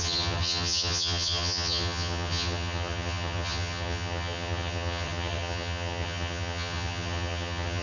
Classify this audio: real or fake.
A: fake